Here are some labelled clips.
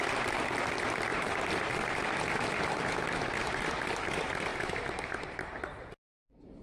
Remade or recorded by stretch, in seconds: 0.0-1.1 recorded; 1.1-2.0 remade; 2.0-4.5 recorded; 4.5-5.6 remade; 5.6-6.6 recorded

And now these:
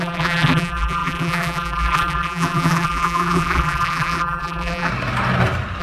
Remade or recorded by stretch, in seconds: 0.0-4.9 remade; 4.9-5.8 recorded

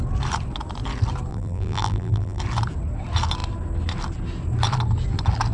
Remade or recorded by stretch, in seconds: 0.0-1.3 recorded; 1.3-2.4 remade; 2.4-5.5 recorded